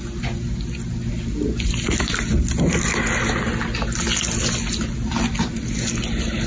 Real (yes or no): yes